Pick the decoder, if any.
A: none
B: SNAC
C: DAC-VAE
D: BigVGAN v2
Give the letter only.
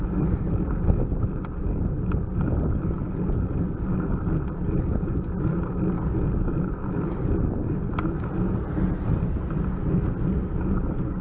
A